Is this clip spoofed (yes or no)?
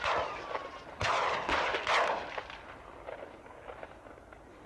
no